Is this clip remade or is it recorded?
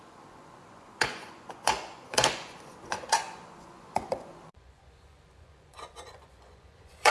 remade